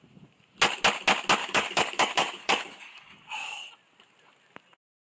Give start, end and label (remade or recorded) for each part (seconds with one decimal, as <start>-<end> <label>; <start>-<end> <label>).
0.0-1.4 recorded; 1.4-3.7 remade; 3.7-5.1 recorded